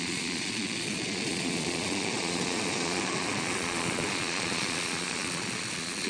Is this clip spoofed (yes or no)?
yes